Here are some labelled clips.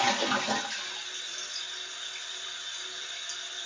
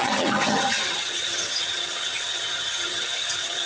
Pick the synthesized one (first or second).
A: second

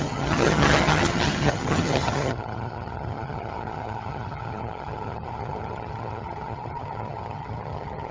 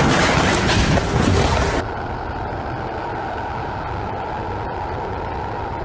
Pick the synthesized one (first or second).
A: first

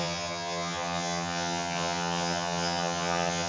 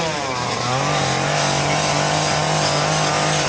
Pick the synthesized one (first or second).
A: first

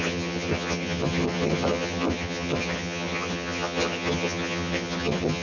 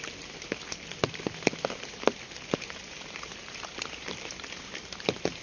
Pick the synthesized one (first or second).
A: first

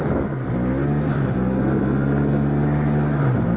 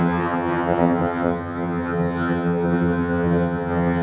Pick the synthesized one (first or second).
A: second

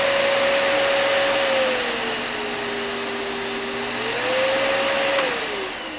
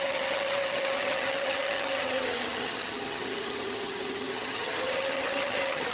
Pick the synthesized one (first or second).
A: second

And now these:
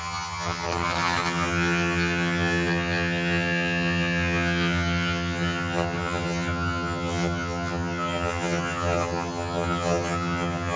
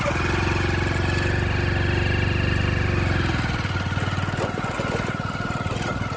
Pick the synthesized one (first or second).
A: first